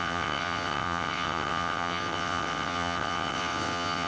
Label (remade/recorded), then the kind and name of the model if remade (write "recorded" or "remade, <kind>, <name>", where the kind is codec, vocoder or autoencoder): remade, vocoder, WaveNeXt